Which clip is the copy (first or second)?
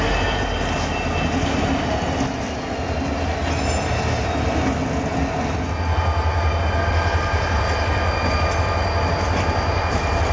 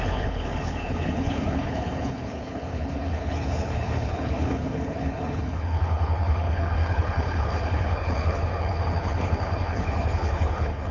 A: second